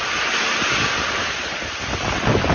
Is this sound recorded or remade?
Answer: recorded